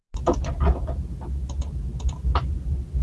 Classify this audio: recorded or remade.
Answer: recorded